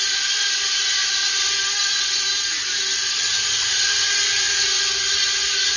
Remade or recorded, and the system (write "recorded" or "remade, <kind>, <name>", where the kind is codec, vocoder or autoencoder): recorded